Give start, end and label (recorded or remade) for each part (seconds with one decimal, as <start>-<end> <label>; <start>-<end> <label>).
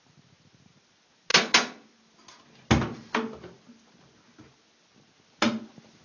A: 0.0-6.0 recorded